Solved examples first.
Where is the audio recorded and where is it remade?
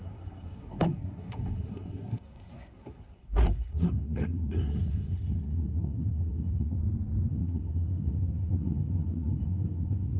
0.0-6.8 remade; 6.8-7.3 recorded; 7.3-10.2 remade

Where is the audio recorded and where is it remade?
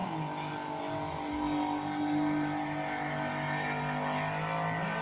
0.0-5.0 recorded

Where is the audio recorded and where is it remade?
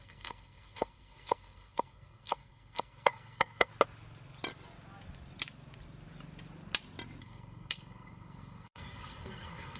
0.0-3.7 remade; 3.7-7.2 recorded; 7.2-9.8 remade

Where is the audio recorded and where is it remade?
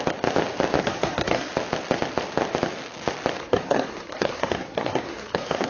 0.0-0.8 recorded; 0.8-1.5 remade; 1.5-3.4 recorded; 3.4-5.7 remade